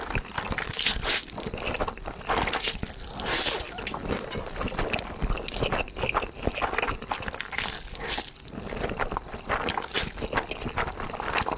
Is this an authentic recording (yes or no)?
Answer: yes